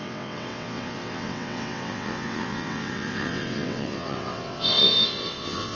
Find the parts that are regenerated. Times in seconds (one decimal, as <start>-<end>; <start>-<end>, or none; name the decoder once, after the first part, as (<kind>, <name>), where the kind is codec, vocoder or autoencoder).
0.0-5.8 (vocoder, WaveNeXt)

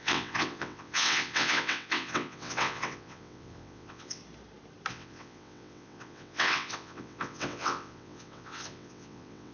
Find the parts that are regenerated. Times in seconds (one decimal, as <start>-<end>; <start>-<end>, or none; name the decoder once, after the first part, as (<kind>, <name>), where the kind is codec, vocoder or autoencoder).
0.0-4.2 (vocoder, WaveNeXt); 4.9-9.5

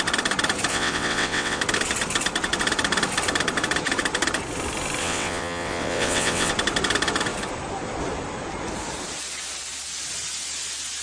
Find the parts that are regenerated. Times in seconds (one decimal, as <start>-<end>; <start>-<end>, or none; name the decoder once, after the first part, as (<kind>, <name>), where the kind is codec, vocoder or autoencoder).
0.7-1.6 (vocoder, WaveNeXt); 5.0-6.5

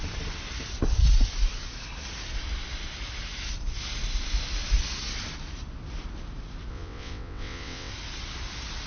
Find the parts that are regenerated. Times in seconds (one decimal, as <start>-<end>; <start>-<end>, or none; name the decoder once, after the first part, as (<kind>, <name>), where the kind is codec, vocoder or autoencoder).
6.7-7.9 (vocoder, WaveNeXt)

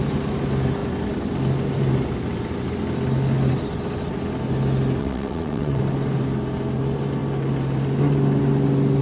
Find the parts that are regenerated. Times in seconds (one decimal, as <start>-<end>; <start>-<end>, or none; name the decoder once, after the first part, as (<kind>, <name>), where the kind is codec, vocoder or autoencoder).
5.0-5.8 (vocoder, WaveNeXt)